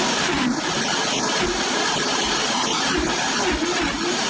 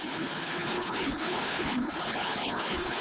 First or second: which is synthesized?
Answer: second